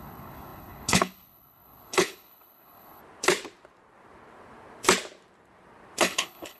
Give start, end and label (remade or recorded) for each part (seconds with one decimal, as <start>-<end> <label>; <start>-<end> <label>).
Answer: 0.0-3.0 remade; 3.0-6.0 recorded; 6.0-6.6 remade